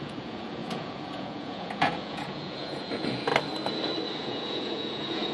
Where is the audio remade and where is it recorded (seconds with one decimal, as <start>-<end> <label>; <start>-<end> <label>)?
0.0-3.3 remade; 3.3-4.2 recorded; 4.2-5.3 remade